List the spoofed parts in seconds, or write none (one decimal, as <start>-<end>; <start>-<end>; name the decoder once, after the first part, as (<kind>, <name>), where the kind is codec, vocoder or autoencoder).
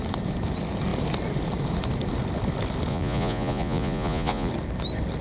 2.9-4.5 (vocoder, Vocos)